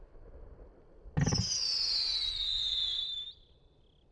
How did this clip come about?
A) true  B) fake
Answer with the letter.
A